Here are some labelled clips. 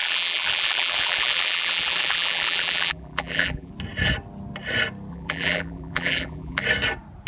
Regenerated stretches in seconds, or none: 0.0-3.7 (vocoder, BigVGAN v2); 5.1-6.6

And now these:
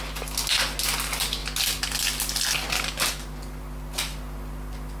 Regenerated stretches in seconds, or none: none

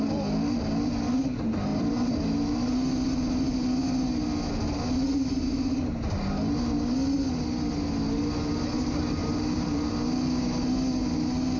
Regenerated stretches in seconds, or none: 1.7-2.2 (vocoder, BigVGAN v2); 9.2-9.9